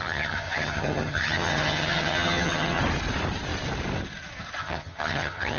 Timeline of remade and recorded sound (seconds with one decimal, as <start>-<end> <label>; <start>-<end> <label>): 0.0-2.8 remade; 2.8-4.6 recorded; 4.6-5.6 remade